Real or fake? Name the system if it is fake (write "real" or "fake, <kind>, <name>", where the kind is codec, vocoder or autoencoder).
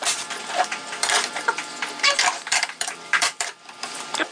fake, vocoder, BigVGAN v2